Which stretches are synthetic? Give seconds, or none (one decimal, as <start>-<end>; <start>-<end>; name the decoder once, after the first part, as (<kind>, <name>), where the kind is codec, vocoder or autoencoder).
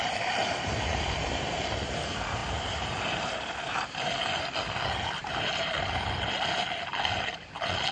0.4-1.4 (vocoder, BigVGAN v2); 5.2-5.7